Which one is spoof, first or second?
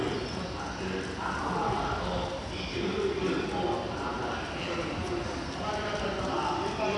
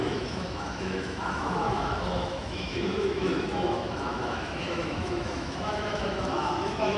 second